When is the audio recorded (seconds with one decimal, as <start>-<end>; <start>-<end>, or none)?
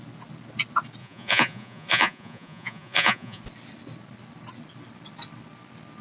0.0-1.0; 3.4-6.0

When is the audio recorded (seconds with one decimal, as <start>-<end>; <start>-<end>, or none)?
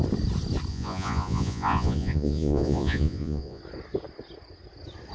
0.0-0.7; 3.6-5.1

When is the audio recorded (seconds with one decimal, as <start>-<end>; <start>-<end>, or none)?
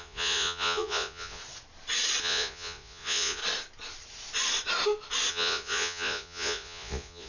1.4-2.2; 3.4-5.3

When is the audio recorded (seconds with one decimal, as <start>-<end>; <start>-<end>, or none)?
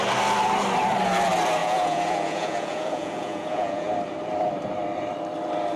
0.0-1.6; 3.9-5.8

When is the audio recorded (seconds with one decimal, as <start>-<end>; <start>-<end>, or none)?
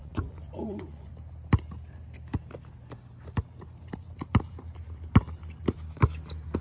1.1-6.6